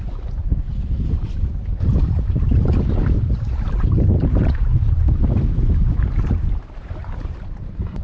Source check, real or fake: fake